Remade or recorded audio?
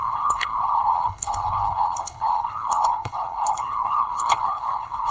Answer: remade